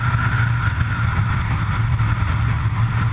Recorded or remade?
recorded